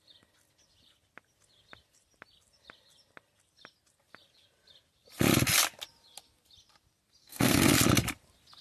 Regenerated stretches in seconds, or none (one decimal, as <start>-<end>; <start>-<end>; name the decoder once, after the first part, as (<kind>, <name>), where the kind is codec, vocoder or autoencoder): 7.2-7.7 (codec, SNAC)